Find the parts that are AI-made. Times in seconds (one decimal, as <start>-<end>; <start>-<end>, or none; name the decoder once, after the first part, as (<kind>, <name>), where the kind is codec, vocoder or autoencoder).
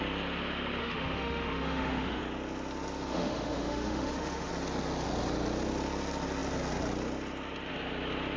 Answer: 0.8-2.2 (autoencoder, DAC-VAE); 3.1-4.5